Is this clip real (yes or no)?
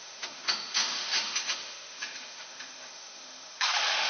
no